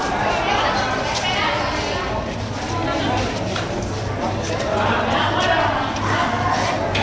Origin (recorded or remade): recorded